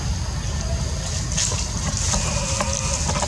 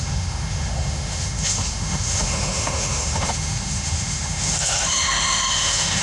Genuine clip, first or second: first